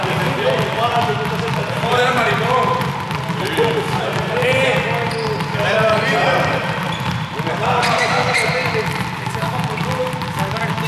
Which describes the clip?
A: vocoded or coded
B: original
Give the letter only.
B